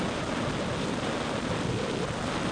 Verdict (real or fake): real